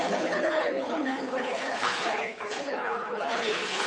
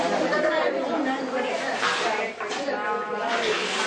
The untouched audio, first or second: second